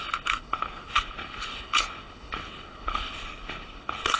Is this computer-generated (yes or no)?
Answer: yes